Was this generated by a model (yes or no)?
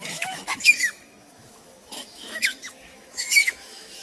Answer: yes